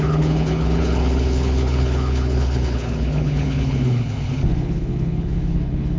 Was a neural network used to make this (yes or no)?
yes